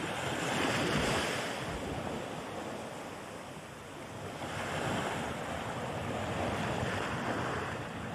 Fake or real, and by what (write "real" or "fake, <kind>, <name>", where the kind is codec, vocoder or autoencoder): real